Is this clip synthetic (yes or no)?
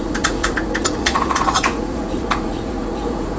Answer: yes